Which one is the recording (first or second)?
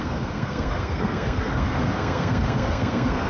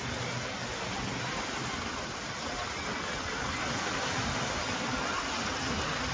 second